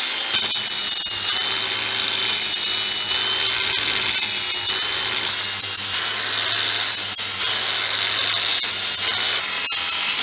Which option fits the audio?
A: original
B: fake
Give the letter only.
A